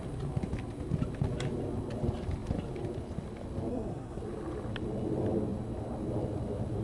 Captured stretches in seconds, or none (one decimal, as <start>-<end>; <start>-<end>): 0.0-3.7; 4.2-6.8